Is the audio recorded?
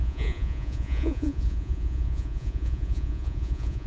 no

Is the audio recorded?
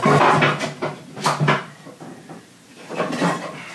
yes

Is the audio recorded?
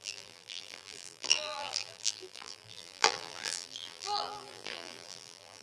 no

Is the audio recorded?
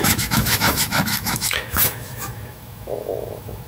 no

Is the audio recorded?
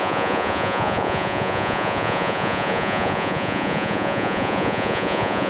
no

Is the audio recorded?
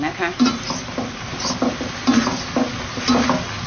yes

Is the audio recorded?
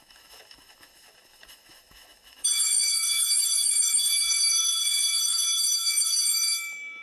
no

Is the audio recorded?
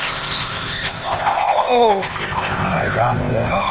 no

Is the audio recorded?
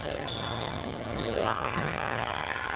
no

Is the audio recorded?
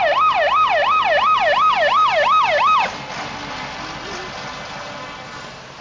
yes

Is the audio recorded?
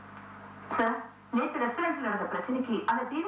yes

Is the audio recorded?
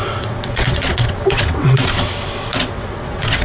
no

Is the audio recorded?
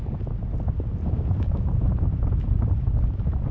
yes